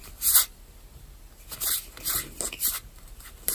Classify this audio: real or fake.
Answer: real